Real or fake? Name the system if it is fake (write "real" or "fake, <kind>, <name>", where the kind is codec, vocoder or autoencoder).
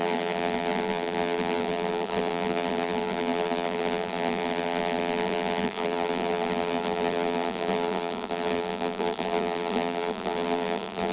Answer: fake, vocoder, BigVGAN v2